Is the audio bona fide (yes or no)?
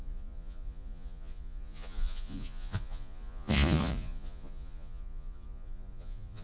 no